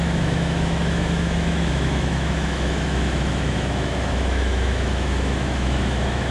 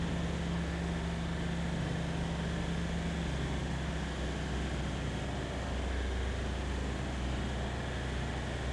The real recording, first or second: second